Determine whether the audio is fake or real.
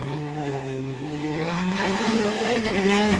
fake